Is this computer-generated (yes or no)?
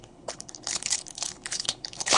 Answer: yes